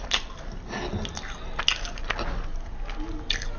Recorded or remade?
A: recorded